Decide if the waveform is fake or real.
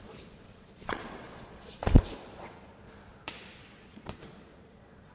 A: fake